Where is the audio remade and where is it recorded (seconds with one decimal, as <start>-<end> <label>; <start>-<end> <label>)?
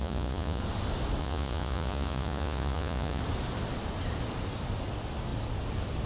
0.0-0.6 remade; 0.6-1.2 recorded; 1.2-3.2 remade; 3.2-6.0 recorded